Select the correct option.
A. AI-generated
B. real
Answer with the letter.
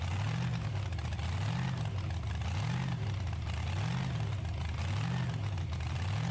B